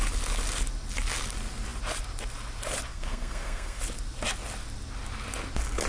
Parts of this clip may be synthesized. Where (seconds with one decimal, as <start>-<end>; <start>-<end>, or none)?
2.9-3.8